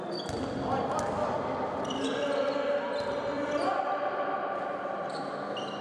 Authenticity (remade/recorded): recorded